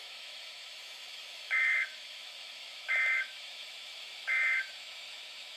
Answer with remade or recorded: remade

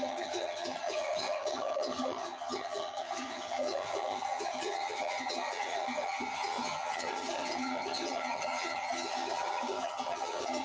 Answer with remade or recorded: remade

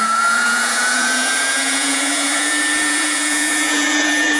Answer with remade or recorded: remade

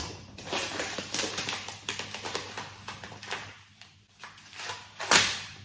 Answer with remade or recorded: remade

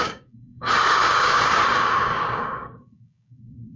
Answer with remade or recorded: remade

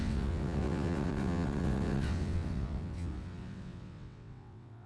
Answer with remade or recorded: remade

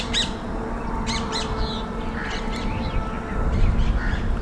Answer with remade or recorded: recorded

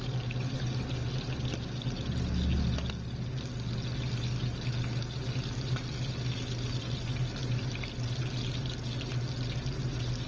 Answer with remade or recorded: recorded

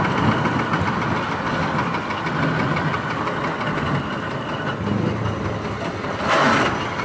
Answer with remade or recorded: recorded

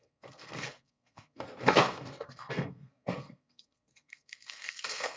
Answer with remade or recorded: remade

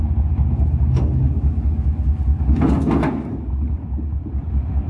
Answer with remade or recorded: recorded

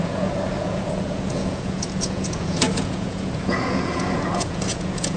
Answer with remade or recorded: remade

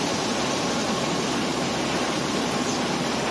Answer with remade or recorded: recorded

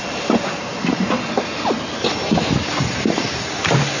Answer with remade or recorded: recorded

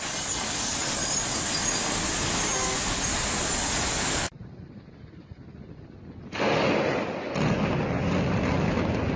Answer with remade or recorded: recorded